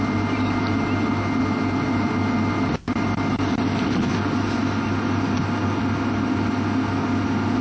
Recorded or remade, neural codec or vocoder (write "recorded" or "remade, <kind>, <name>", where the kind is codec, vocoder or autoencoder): recorded